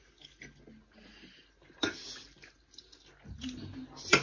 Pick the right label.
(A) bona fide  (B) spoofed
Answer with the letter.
A